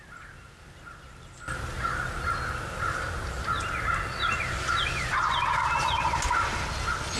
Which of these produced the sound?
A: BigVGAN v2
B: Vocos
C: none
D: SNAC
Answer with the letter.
C